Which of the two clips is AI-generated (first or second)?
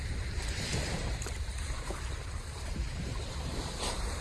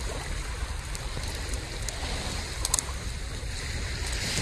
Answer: first